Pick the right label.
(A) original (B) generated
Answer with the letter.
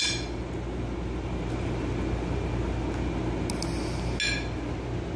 A